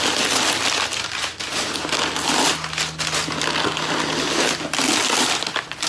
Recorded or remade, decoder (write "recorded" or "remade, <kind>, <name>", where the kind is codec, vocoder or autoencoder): recorded